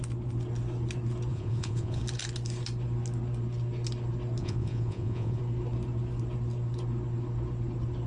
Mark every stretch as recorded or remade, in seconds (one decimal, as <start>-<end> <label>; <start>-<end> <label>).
0.0-1.3 recorded; 1.3-2.0 remade; 2.0-4.4 recorded; 4.4-5.4 remade; 5.4-8.1 recorded